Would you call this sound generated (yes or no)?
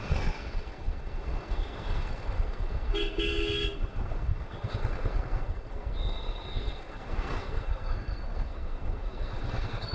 yes